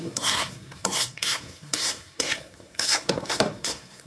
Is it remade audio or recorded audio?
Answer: remade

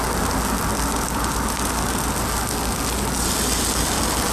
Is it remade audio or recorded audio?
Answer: recorded